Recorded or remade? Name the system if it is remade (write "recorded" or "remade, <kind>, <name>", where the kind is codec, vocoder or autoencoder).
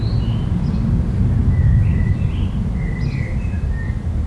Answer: recorded